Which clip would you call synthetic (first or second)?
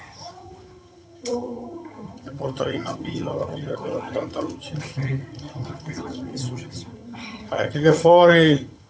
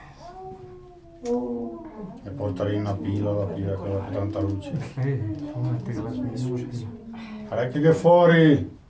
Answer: first